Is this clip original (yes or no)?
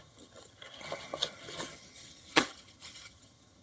no